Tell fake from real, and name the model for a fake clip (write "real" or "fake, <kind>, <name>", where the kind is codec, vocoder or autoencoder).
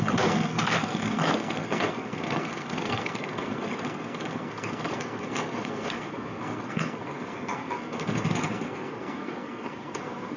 fake, codec, SNAC